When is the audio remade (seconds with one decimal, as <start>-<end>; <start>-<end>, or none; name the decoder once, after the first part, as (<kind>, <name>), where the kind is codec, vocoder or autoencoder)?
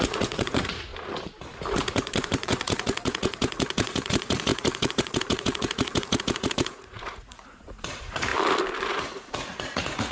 0.0-0.9 (vocoder, Vocos); 1.7-8.3; 8.9-10.1